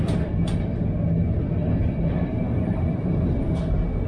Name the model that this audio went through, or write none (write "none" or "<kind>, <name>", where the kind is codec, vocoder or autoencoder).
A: none